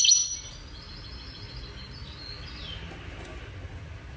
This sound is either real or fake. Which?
real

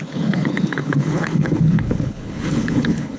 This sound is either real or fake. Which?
fake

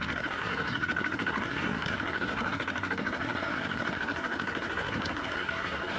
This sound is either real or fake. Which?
fake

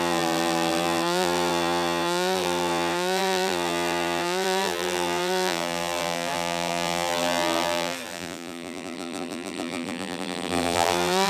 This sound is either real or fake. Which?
fake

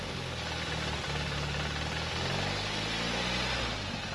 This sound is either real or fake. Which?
real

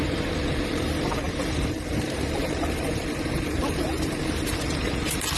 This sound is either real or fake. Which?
fake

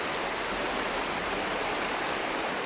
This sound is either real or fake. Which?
real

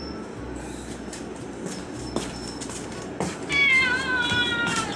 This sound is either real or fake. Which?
real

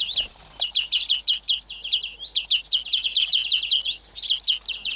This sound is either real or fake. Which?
real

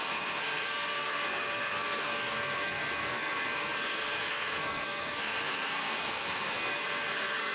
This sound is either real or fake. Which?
fake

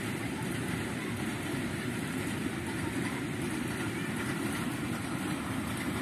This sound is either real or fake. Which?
fake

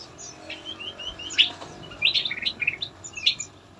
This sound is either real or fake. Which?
real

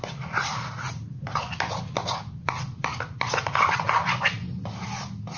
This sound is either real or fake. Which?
real